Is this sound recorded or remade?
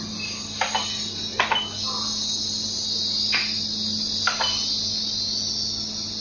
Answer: recorded